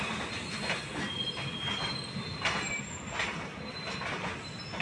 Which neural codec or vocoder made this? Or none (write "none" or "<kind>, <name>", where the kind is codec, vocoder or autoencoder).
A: none